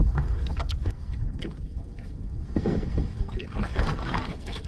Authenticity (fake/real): fake